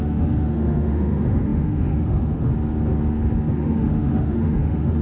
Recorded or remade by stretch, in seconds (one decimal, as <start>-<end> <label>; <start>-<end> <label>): 0.0-2.5 remade; 2.5-3.5 recorded; 3.5-5.0 remade